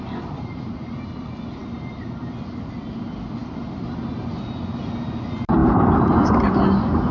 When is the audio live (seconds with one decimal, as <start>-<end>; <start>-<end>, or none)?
0.0-7.1